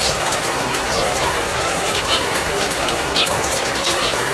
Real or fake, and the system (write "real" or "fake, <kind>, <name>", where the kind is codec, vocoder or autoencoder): fake, codec, SNAC